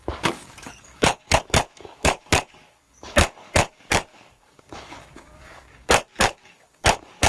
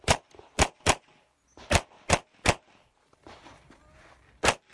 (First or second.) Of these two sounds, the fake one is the first